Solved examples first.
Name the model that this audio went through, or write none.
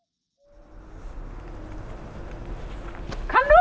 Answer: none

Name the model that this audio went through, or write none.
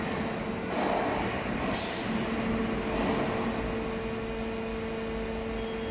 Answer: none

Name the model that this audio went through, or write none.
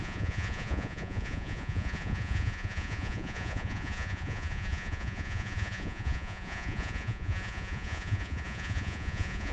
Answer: vocoder, Vocos